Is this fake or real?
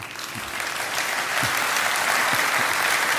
real